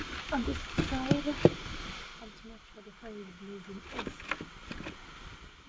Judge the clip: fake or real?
real